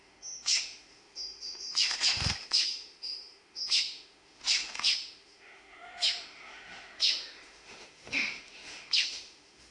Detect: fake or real fake